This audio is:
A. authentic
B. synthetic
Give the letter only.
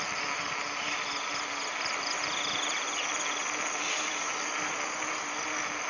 A